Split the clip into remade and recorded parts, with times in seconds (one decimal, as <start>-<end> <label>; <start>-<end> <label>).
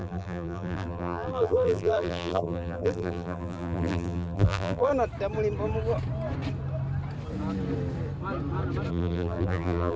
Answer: 0.0-4.9 remade; 4.9-8.9 recorded; 8.9-10.0 remade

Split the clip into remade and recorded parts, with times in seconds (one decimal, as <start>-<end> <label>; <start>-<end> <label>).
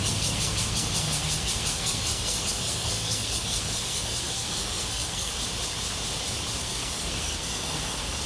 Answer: 0.0-5.3 remade; 5.3-6.6 recorded; 6.6-8.3 remade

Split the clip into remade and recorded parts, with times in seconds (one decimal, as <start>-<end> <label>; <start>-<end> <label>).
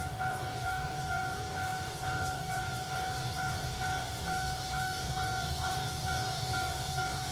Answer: 0.0-7.3 remade